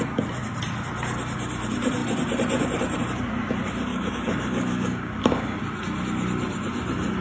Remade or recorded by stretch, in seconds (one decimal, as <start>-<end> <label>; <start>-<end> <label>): 0.0-3.9 recorded; 3.9-5.6 remade; 5.6-7.2 recorded